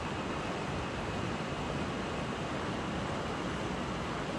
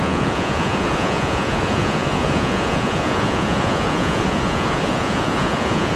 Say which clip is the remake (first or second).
second